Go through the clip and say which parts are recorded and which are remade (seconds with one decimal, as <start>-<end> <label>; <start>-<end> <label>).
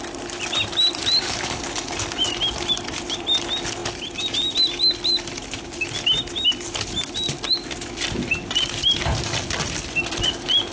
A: 0.0-10.7 recorded